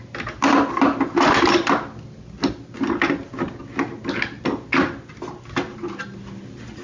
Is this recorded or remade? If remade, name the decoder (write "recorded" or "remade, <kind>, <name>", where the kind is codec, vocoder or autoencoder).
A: recorded